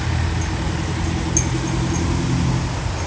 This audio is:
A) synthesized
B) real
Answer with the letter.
B